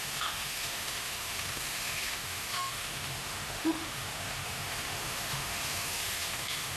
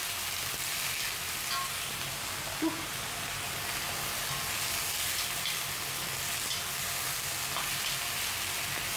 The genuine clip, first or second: second